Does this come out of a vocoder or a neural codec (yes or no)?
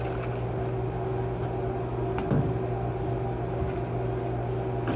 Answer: no